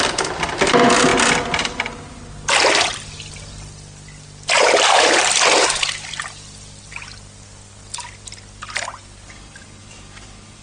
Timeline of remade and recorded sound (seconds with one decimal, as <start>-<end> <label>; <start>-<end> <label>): 0.0-10.6 recorded